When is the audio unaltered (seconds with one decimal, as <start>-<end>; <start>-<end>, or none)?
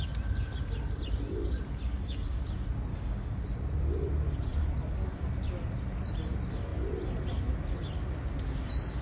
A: 0.0-1.8; 2.4-2.9; 3.4-9.0